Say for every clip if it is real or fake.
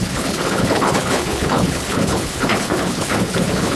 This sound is fake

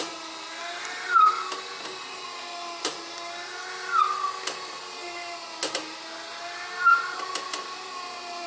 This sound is real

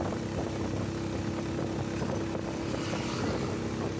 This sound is real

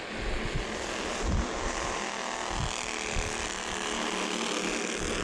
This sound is real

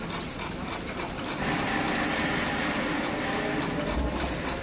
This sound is real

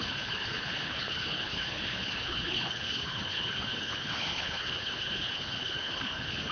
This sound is fake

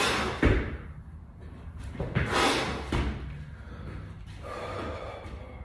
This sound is real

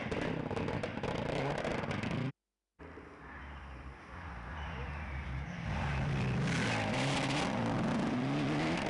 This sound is real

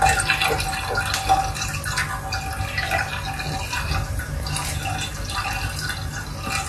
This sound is real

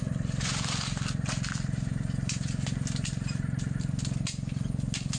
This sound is real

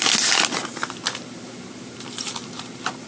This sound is real